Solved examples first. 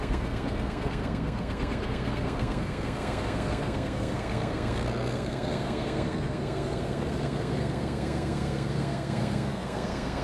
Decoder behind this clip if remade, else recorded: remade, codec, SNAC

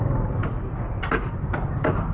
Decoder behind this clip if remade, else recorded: recorded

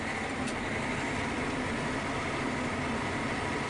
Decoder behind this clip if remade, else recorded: remade, vocoder, BigVGAN v2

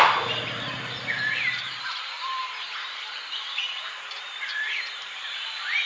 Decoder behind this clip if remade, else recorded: remade, vocoder, BigVGAN v2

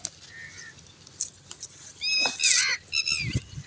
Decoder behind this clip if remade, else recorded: recorded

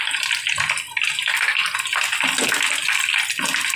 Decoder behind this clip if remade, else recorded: recorded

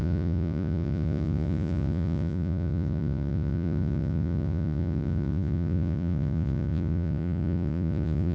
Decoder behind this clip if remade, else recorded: remade, vocoder, Vocos